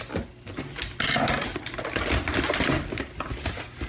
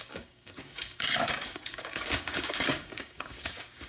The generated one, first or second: second